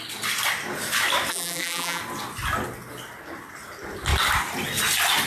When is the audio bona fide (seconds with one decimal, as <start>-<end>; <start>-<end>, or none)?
0.0-1.3; 2.0-5.3